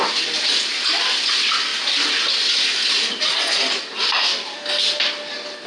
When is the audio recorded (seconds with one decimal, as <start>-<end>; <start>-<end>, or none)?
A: 0.0-5.7